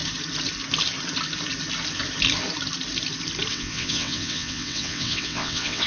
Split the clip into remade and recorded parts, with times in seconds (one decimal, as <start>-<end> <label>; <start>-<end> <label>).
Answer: 0.0-3.5 recorded; 3.5-5.9 remade